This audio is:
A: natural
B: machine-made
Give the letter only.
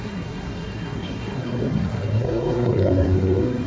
B